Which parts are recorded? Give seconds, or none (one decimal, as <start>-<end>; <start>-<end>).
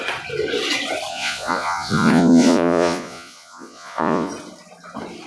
0.0-1.1; 4.3-5.3